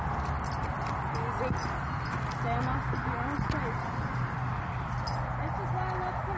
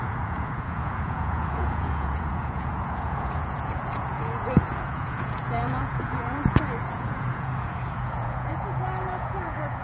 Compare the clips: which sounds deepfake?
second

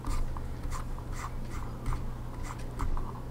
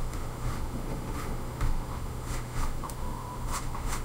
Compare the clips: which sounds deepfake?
second